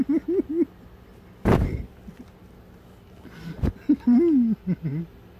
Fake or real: real